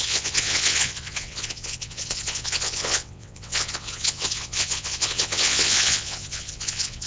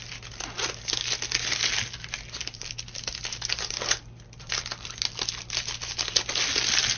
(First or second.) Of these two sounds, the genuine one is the second